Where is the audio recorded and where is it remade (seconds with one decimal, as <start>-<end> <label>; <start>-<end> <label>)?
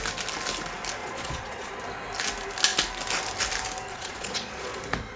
0.0-1.0 recorded; 1.0-1.8 remade; 1.8-3.9 recorded; 3.9-4.8 remade; 4.8-5.2 recorded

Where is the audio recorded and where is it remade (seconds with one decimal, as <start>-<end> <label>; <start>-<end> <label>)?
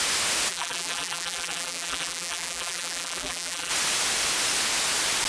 0.0-0.5 recorded; 0.5-3.7 remade; 3.7-5.3 recorded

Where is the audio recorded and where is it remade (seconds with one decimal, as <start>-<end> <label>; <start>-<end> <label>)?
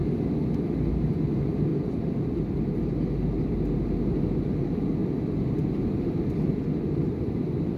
0.0-1.7 recorded; 1.7-2.6 remade; 2.6-5.0 recorded; 5.0-6.6 remade; 6.6-7.8 recorded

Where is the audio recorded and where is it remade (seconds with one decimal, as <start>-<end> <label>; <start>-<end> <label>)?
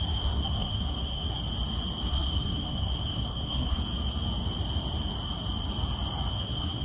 0.0-1.4 remade; 1.4-2.1 recorded; 2.1-3.8 remade; 3.8-6.3 recorded; 6.3-6.8 remade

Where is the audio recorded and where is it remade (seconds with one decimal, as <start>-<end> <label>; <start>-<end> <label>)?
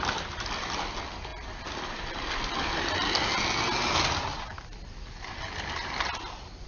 0.0-6.7 recorded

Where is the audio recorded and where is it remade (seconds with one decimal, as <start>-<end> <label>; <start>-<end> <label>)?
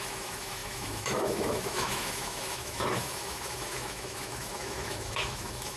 0.0-5.8 remade